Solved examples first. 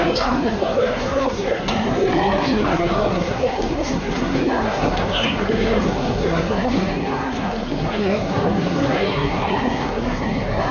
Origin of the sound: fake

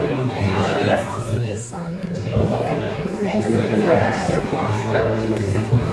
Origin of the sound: fake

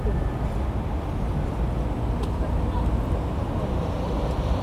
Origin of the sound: real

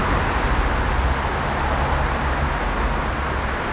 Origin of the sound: real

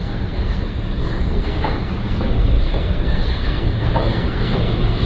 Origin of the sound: fake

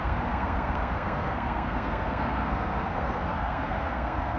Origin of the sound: fake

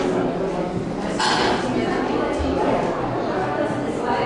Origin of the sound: real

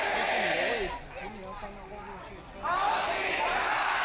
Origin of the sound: real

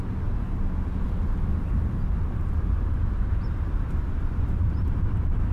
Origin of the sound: real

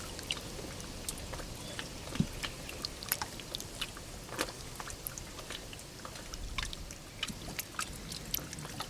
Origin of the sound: real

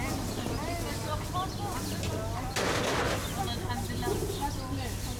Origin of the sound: real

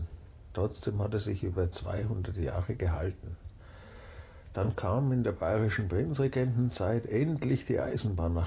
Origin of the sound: real